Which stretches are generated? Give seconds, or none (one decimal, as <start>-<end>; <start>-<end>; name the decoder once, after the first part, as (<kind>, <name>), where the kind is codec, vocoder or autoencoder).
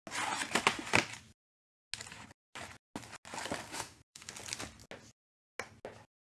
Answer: 3.7-4.3 (autoencoder, DAC-VAE)